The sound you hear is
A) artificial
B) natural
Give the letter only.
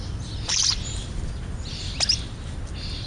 B